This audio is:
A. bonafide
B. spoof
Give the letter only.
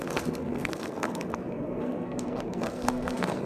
B